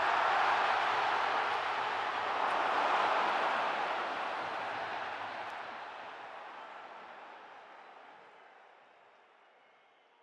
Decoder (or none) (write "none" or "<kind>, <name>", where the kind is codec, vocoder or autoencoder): none